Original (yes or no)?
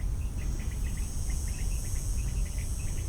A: yes